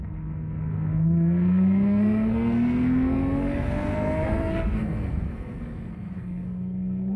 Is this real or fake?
fake